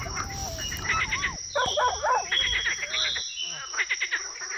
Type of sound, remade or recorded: recorded